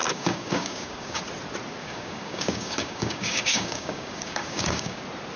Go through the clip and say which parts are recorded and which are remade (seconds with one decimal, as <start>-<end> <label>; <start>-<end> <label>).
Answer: 0.0-1.2 remade; 1.2-1.8 recorded; 1.8-5.0 remade; 5.0-5.4 recorded